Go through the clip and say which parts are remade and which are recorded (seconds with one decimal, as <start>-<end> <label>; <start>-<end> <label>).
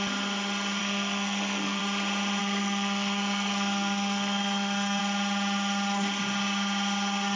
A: 0.0-0.8 recorded; 0.8-1.8 remade; 1.8-2.4 recorded; 2.4-5.0 remade; 5.0-7.4 recorded